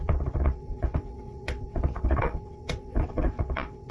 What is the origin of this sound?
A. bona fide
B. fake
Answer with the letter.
B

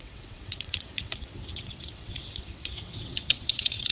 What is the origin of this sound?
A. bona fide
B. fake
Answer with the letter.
B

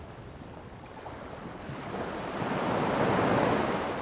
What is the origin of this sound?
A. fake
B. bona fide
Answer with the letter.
B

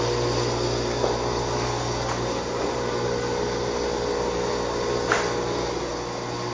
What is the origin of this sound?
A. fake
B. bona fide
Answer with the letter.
B